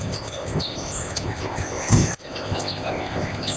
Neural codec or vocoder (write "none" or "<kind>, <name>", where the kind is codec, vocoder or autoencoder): codec, ZipCodec